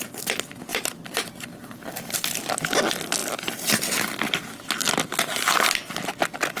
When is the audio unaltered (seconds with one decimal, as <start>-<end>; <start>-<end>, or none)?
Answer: 0.0-0.7; 2.3-6.6